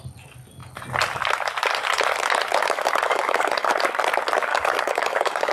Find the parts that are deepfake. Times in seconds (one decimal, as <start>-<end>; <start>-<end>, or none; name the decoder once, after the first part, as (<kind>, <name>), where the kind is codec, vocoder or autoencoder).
2.6-3.7 (codec, DAC); 4.5-5.5